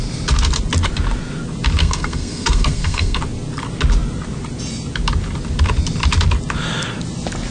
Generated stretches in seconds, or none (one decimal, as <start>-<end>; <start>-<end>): 1.8-3.2